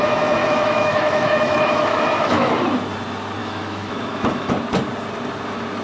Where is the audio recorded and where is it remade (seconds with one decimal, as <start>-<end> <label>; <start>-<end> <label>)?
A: 0.0-0.4 recorded; 0.4-2.5 remade; 2.5-3.4 recorded; 3.4-4.5 remade; 4.5-5.8 recorded